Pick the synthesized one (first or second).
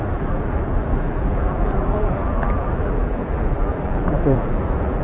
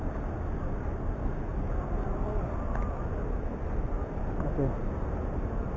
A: first